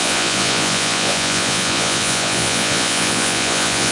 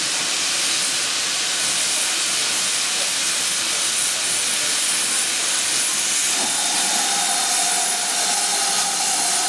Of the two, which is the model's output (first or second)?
first